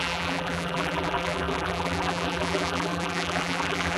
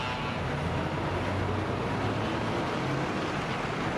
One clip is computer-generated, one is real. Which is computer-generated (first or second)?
first